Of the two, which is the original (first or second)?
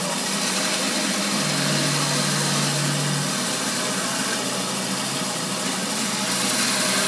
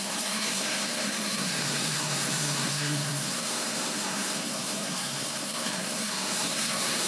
first